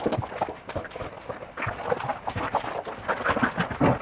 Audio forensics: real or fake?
real